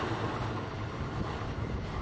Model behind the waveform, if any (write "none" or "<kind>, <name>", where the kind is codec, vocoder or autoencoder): none